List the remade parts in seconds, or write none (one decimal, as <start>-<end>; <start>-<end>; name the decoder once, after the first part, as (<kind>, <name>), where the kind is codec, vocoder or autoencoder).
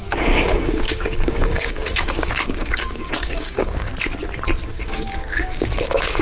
0.0-3.9 (codec, DAC); 4.7-6.2